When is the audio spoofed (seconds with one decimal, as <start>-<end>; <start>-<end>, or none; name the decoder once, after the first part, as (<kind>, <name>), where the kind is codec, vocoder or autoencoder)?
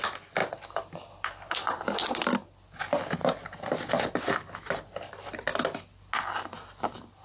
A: 0.4-1.8 (vocoder, BigVGAN v2)